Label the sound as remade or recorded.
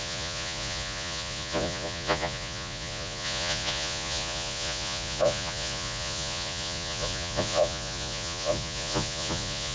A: remade